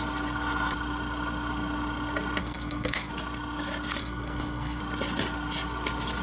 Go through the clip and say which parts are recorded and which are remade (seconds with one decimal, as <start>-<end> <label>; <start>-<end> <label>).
0.0-2.4 recorded; 2.4-3.1 remade; 3.1-4.0 recorded; 4.0-4.8 remade; 4.8-6.2 recorded